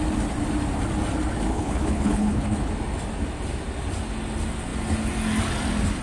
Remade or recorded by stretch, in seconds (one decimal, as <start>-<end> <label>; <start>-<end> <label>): 0.0-1.5 recorded; 1.5-2.7 remade; 2.7-6.0 recorded